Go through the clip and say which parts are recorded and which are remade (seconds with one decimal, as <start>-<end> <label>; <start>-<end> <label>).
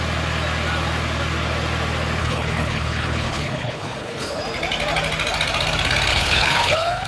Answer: 0.0-2.2 recorded; 2.2-4.4 remade; 4.4-6.1 recorded; 6.1-7.1 remade